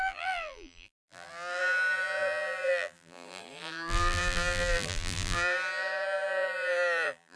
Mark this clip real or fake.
fake